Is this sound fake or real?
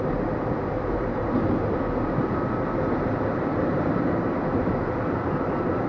fake